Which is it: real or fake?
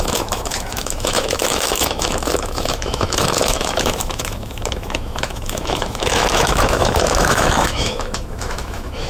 fake